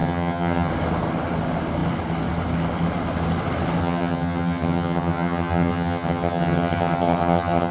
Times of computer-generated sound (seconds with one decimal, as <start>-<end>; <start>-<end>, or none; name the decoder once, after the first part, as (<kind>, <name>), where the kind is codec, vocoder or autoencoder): 0.0-0.7 (vocoder, HiFi-GAN); 3.8-7.7